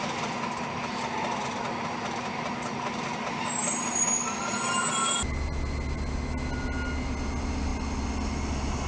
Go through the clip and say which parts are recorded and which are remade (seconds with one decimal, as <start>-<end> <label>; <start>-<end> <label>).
0.0-8.9 recorded